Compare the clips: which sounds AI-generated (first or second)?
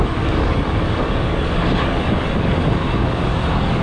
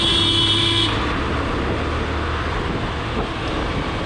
first